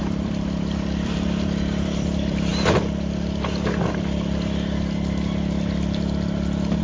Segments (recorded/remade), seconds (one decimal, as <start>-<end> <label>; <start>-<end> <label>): 0.0-2.5 remade; 2.5-6.8 recorded